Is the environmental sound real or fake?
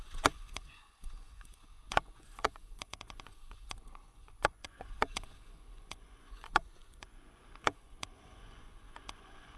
fake